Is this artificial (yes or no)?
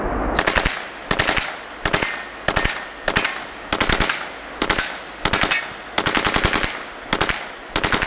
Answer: no